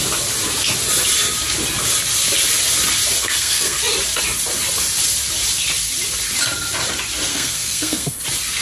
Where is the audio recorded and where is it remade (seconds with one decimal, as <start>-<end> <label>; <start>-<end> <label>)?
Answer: 0.0-3.2 recorded; 3.2-3.8 remade; 3.8-7.3 recorded; 7.3-8.2 remade; 8.2-8.6 recorded